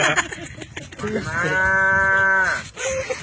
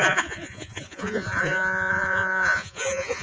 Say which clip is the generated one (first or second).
second